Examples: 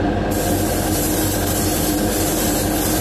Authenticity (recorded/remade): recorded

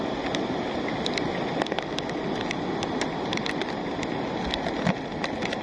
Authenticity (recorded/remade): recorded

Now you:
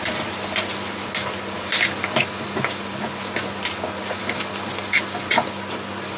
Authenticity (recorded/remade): recorded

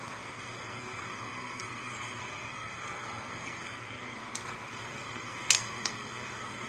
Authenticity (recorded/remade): remade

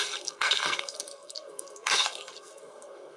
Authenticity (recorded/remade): remade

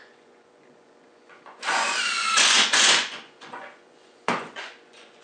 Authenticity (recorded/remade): remade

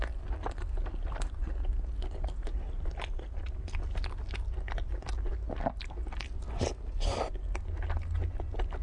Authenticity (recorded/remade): recorded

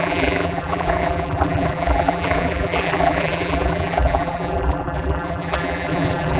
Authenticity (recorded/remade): remade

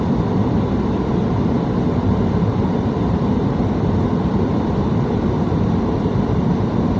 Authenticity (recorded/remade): remade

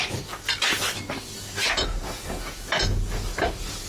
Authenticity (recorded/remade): recorded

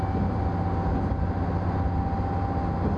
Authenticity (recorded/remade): recorded